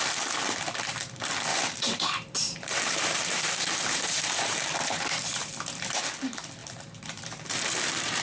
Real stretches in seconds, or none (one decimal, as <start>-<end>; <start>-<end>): 0.0-1.5; 6.0-6.6